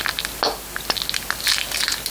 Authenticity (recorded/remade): recorded